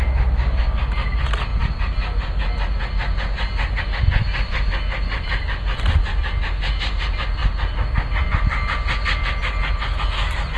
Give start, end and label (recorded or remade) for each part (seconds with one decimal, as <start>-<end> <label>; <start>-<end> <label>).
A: 0.0-4.2 recorded; 4.2-6.0 remade; 6.0-10.6 recorded